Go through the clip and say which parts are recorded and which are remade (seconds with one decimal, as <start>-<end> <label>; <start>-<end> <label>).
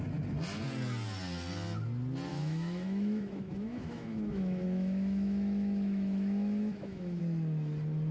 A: 0.0-2.3 recorded; 2.3-7.2 remade; 7.2-8.1 recorded